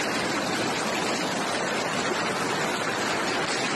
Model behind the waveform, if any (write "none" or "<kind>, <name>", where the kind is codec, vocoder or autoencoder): none